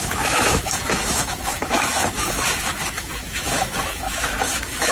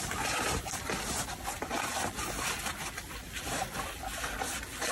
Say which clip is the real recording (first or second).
second